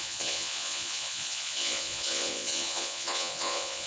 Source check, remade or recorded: remade